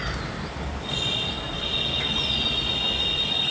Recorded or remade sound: recorded